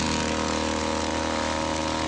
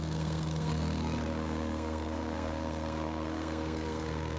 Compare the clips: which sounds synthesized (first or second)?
second